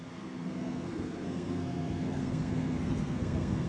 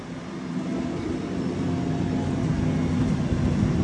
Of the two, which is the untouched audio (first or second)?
second